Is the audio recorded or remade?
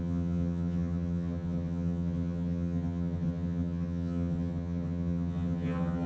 remade